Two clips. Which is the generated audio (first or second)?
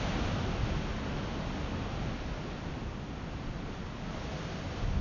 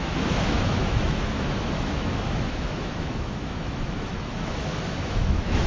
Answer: second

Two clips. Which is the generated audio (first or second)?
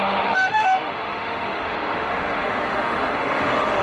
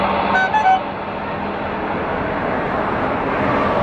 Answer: first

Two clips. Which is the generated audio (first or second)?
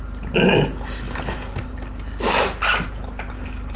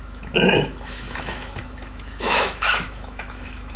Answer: second